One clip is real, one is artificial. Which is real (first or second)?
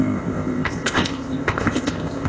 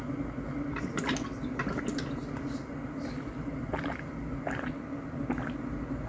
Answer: second